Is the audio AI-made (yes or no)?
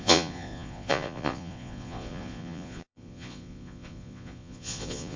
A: yes